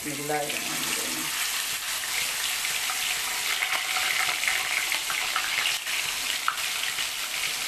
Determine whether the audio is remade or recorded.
recorded